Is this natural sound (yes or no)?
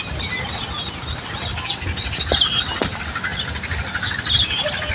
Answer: yes